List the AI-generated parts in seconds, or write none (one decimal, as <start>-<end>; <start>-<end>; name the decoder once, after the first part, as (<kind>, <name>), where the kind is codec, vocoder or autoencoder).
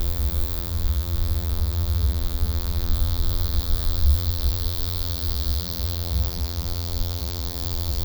0.0-8.0 (vocoder, BigVGAN v2)